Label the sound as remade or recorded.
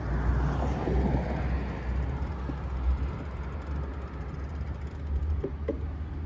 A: recorded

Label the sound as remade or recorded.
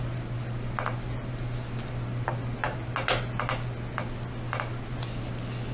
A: recorded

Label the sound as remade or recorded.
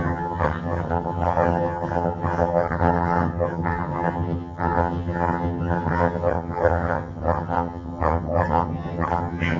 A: remade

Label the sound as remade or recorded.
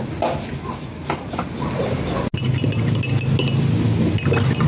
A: recorded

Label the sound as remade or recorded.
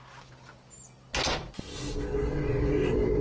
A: recorded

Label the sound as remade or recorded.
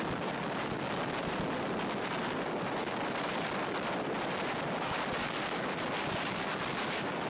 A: recorded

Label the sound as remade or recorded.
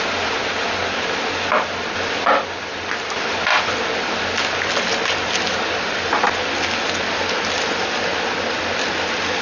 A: recorded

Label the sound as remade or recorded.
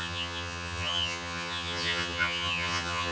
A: remade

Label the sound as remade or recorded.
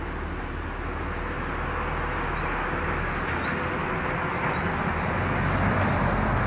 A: recorded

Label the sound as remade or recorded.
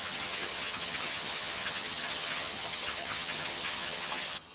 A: remade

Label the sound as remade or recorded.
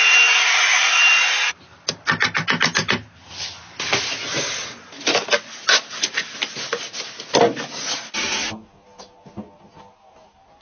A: recorded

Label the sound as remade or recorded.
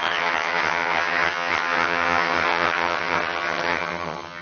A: remade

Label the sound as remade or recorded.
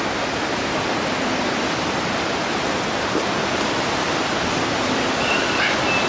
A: recorded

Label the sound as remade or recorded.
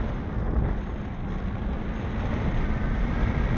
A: recorded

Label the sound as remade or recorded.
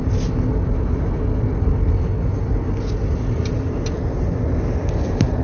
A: recorded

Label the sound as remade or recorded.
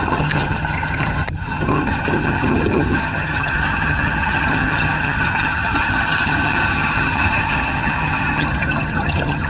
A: remade